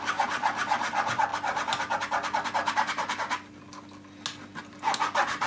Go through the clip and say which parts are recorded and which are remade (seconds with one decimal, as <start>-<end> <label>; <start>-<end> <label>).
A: 0.0-5.5 recorded